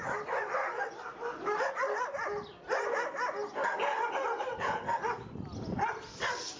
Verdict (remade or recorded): recorded